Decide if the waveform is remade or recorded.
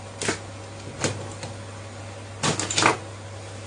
recorded